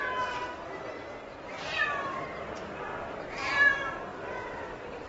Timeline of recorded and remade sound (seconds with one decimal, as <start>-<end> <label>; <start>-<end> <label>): 0.0-0.4 recorded; 0.4-2.7 remade; 2.7-4.1 recorded; 4.1-5.1 remade